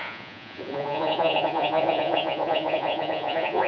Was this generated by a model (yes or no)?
yes